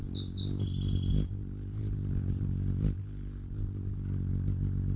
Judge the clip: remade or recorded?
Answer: recorded